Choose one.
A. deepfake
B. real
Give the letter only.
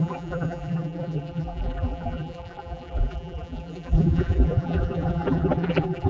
A